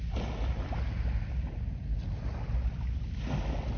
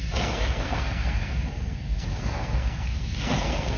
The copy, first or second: second